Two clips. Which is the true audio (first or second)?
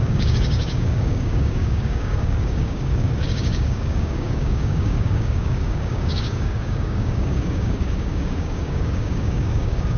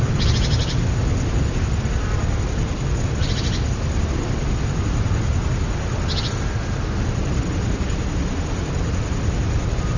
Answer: second